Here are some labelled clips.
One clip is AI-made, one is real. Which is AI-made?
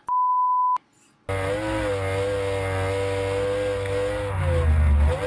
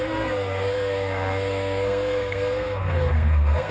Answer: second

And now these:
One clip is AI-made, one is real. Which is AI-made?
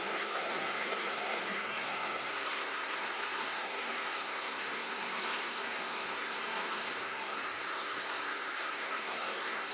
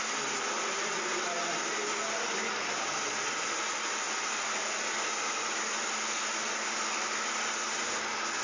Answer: first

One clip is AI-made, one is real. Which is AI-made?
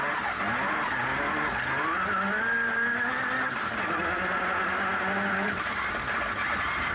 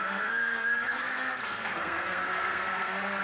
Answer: second